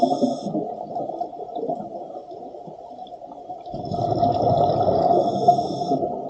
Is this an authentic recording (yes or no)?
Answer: yes